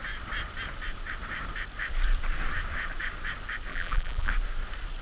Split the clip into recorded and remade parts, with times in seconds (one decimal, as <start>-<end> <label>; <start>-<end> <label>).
0.0-3.7 recorded; 3.7-4.3 remade; 4.3-5.0 recorded